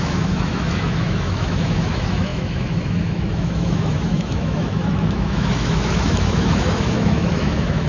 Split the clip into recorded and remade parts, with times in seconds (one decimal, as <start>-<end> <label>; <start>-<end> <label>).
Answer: 0.0-7.9 remade